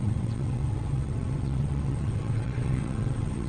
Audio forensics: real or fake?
fake